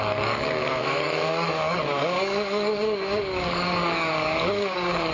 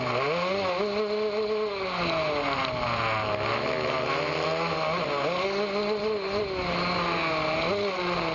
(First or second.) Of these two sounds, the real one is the second